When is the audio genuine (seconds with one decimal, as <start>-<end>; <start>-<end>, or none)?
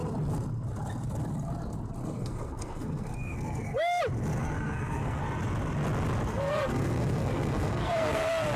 0.0-2.0; 4.0-4.4; 5.2-6.3